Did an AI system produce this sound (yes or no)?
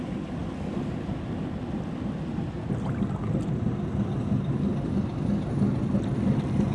no